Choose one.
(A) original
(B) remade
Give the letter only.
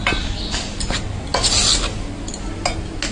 A